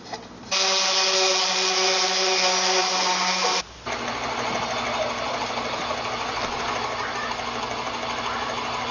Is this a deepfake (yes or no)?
no